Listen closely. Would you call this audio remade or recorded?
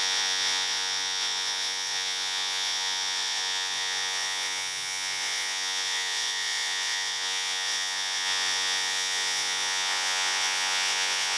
remade